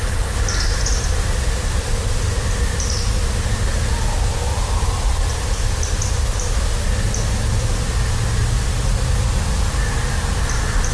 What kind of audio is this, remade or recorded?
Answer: recorded